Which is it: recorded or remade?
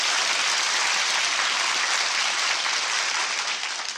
recorded